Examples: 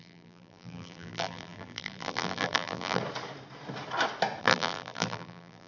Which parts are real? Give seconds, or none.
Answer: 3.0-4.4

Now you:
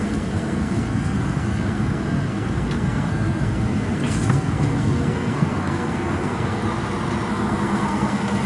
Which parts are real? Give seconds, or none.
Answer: 6.6-7.3